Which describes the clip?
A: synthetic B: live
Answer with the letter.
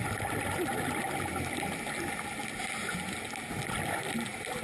B